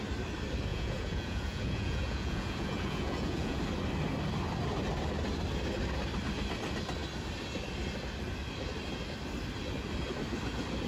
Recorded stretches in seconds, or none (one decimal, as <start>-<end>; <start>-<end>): 0.0-0.7; 3.6-10.9

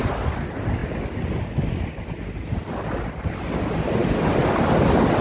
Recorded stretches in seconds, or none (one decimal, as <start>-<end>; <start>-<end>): 0.0-5.2

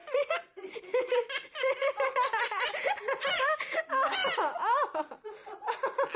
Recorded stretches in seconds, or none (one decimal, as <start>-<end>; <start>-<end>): 2.7-4.2; 5.8-6.2